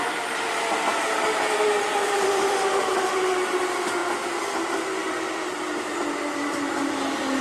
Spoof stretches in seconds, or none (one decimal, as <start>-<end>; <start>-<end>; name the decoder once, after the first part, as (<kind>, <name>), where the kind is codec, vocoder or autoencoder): 2.2-2.8 (vocoder, BigVGAN v2); 5.0-6.6